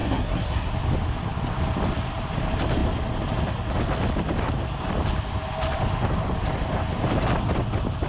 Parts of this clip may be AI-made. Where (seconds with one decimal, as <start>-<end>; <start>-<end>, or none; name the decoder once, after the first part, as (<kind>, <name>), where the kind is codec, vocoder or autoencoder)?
0.0-0.7 (codec, SNAC)